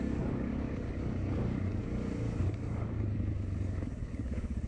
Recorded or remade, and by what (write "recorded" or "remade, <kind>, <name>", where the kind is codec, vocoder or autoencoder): remade, codec, DAC